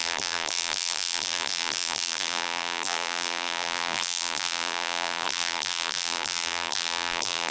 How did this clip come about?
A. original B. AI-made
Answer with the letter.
B